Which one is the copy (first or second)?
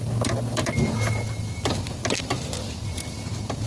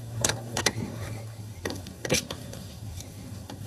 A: second